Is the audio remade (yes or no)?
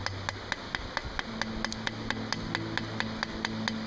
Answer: no